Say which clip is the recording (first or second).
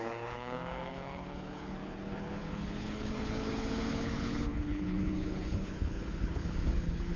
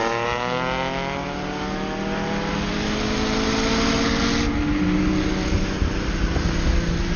second